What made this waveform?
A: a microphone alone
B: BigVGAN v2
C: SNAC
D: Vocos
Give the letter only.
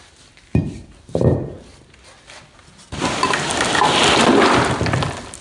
B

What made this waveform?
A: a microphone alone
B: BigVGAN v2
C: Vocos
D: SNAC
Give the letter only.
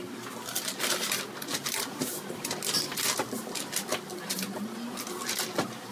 A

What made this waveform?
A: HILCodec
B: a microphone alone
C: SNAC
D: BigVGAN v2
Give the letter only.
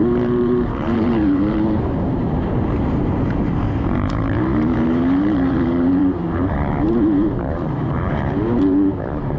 D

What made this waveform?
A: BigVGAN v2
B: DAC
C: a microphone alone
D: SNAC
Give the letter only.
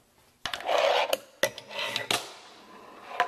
C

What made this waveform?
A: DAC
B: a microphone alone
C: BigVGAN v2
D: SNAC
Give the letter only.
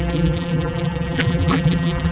C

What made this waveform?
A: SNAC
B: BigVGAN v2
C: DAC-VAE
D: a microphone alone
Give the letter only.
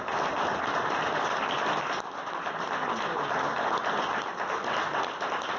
D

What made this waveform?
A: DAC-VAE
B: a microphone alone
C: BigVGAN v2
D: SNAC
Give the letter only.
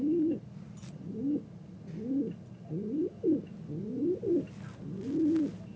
B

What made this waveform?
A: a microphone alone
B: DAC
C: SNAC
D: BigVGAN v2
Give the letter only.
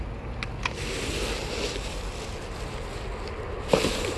A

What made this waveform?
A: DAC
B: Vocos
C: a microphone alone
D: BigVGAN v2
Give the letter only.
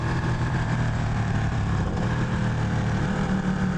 D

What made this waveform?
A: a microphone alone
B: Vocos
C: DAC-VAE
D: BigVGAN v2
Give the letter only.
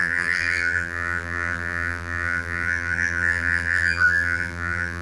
D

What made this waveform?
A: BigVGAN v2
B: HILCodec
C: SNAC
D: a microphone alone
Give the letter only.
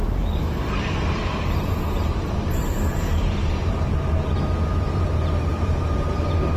A